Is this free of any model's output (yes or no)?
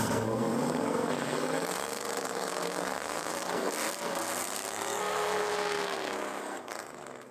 no